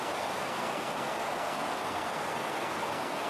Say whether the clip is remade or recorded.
remade